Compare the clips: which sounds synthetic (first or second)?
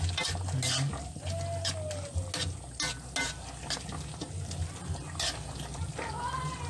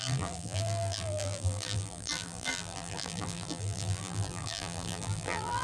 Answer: second